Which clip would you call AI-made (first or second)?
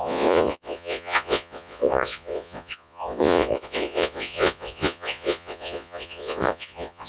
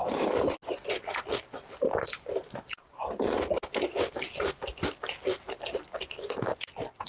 first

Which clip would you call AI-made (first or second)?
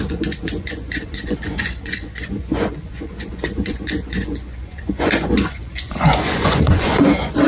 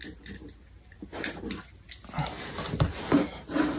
first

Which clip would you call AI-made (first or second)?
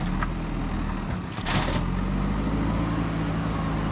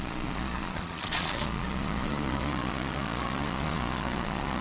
second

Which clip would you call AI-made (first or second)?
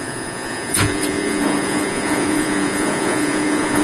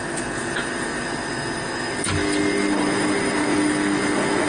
first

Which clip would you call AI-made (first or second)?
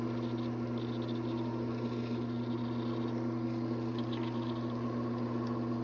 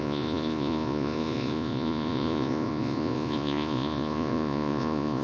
second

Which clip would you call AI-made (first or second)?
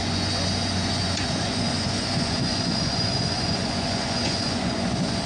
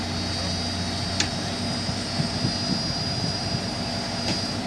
first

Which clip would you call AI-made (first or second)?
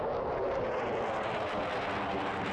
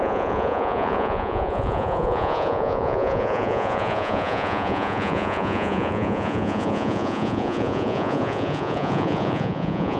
second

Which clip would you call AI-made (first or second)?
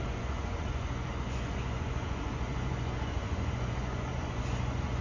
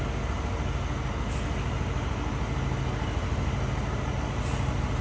first